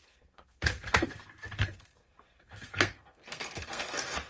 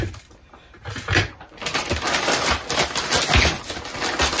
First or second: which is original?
second